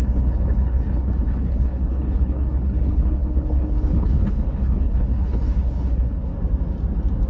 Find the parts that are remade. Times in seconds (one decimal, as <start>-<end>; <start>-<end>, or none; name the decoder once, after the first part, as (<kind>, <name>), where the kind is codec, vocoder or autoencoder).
0.0-6.3 (codec, HILCodec)